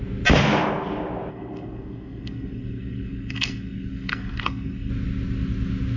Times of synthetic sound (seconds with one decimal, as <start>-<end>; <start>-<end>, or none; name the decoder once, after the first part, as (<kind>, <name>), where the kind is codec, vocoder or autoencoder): 1.3-4.9 (codec, SNAC)